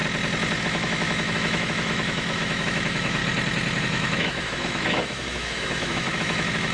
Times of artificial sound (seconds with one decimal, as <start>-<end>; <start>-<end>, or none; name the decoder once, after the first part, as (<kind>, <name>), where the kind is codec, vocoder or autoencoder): 0.6-3.2 (autoencoder, DAC-VAE); 3.8-6.7